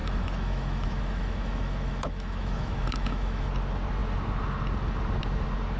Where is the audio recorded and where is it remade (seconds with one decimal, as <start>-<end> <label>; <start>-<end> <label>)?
0.0-3.5 remade; 3.5-5.8 recorded